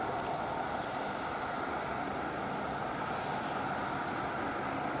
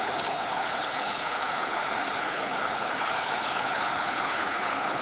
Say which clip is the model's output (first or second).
second